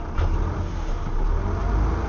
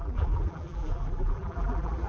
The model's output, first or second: second